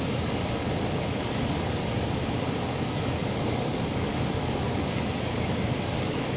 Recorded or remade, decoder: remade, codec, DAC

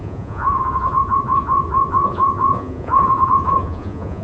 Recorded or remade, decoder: remade, vocoder, Vocos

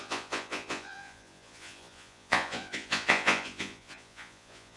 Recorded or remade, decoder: remade, vocoder, Vocos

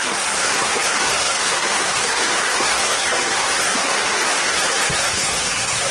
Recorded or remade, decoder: remade, codec, SNAC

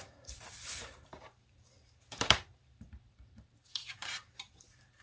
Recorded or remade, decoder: remade, vocoder, BigVGAN v2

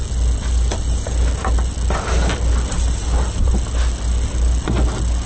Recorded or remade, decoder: recorded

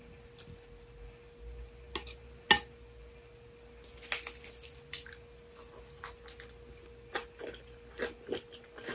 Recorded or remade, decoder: recorded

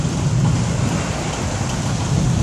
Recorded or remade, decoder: recorded